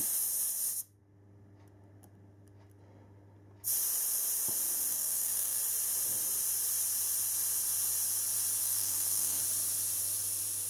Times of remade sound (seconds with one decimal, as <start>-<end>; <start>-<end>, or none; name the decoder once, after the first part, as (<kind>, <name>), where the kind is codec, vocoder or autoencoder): 4.9-5.6 (codec, SNAC); 8.6-9.4